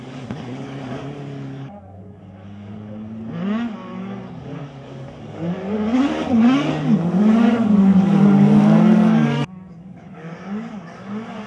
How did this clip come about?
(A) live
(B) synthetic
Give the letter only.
B